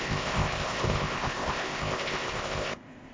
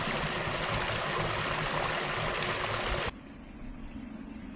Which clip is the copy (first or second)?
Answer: first